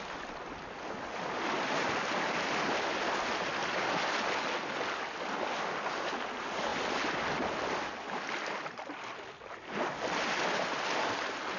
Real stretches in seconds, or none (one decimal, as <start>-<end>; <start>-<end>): 0.0-11.6